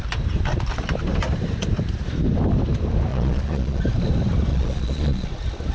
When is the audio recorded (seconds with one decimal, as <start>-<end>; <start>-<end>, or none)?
0.0-3.1; 3.8-4.5; 5.3-5.7